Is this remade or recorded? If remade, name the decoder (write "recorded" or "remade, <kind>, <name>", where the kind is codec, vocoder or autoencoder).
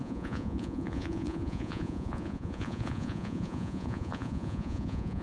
remade, vocoder, Vocos